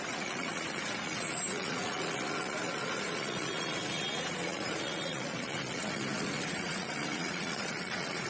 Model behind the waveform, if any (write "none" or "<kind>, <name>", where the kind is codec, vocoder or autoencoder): vocoder, Vocos